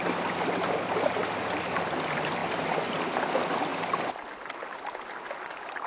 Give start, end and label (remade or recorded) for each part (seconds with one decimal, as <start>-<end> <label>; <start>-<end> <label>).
0.0-5.9 recorded